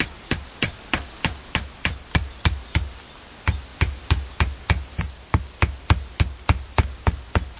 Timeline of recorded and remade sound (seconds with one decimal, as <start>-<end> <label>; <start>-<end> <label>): 0.0-7.6 recorded